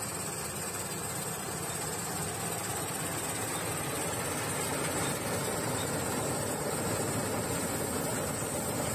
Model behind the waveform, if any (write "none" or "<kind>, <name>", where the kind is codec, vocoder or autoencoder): none